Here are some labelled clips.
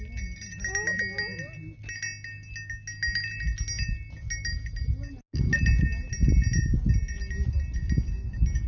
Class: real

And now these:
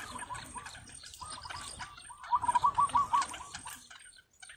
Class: real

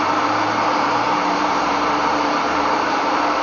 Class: fake